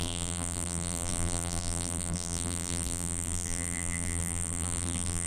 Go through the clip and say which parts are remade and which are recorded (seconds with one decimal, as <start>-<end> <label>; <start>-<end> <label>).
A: 0.0-5.3 remade